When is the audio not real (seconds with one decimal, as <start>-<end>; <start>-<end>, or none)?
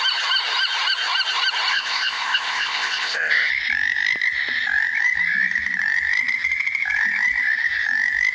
1.7-3.5